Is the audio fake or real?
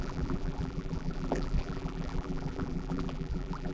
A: fake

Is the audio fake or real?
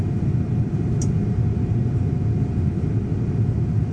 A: real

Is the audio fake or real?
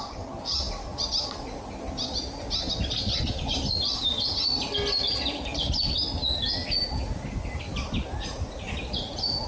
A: real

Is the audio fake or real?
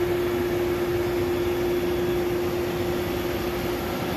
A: real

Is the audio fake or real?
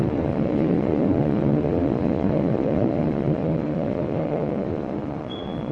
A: fake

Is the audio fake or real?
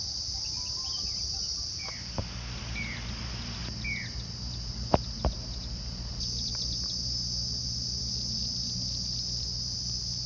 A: real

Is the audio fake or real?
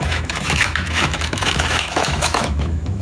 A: fake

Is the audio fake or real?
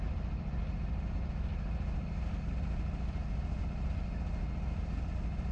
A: real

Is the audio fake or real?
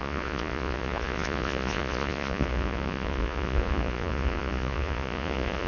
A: fake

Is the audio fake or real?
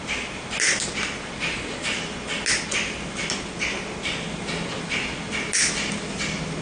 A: real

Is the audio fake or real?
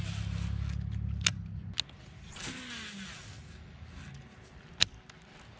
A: real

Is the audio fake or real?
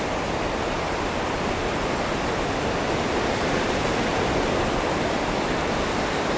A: real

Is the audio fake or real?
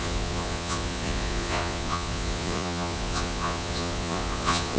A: fake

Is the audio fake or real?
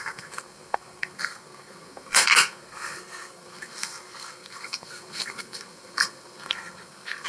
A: fake